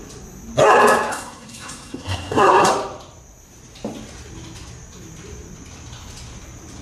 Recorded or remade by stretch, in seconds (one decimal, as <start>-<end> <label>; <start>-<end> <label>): 0.0-1.1 recorded; 1.1-2.7 remade; 2.7-6.8 recorded